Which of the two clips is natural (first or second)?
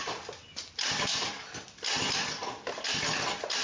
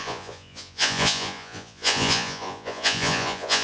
first